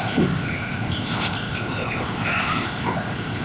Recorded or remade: remade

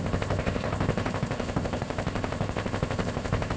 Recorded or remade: remade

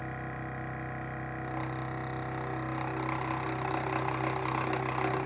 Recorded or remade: recorded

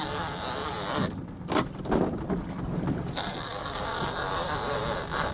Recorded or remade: recorded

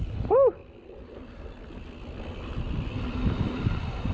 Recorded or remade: recorded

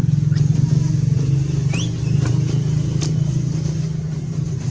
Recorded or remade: recorded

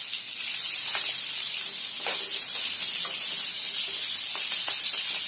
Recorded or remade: recorded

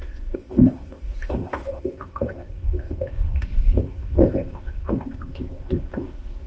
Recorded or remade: remade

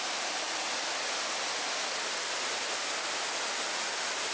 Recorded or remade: recorded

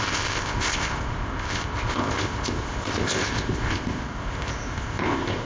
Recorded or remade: remade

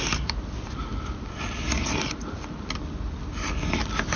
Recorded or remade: recorded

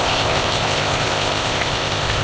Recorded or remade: remade